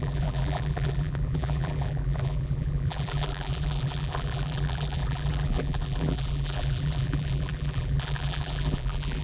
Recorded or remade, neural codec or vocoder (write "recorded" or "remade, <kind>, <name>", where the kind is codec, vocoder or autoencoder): remade, vocoder, BigVGAN v2